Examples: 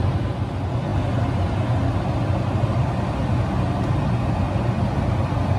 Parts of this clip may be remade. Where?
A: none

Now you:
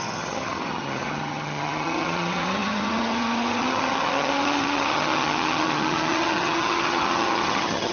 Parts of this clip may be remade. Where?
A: 0.0-7.9 (vocoder, HiFi-GAN)

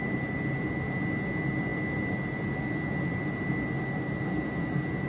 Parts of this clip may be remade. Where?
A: none

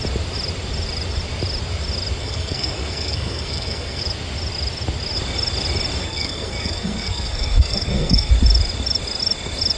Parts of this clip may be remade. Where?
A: 2.2-4.0 (codec, SNAC); 6.0-8.3